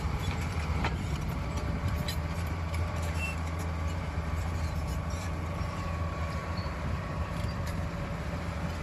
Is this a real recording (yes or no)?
no